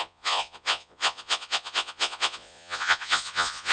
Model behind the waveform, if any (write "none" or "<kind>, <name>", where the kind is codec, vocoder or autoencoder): vocoder, Vocos